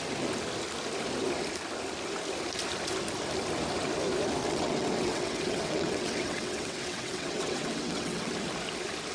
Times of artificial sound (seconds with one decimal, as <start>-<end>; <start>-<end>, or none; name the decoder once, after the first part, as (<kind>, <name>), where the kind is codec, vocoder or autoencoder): 4.4-8.3 (vocoder, WaveNeXt)